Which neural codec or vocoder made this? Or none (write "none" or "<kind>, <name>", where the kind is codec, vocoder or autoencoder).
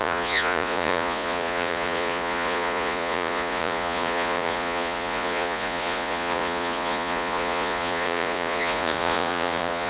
vocoder, Vocos